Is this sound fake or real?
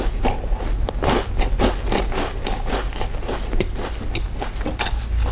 real